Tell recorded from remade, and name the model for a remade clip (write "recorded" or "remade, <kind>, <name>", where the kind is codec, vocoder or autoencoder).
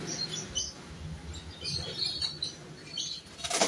recorded